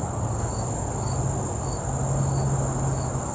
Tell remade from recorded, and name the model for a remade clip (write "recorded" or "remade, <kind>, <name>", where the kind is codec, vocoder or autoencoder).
recorded